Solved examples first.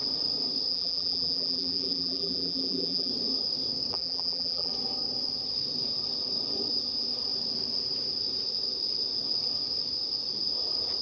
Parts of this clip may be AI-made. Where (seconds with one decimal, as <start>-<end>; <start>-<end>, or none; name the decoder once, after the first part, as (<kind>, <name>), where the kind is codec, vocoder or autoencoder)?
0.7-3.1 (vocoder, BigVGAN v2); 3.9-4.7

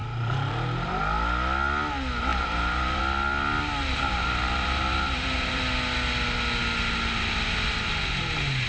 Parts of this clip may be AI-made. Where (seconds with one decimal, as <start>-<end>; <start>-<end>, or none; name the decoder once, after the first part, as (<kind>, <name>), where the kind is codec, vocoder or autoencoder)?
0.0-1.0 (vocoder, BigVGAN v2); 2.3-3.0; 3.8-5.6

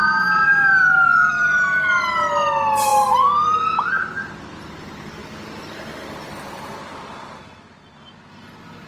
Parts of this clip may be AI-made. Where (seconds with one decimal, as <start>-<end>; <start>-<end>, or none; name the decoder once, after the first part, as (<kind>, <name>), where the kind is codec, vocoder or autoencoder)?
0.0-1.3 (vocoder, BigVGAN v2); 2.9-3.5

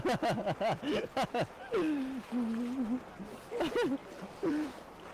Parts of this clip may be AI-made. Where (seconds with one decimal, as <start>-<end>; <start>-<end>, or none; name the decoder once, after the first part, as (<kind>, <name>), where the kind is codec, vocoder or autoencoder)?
4.0-5.1 (vocoder, BigVGAN v2)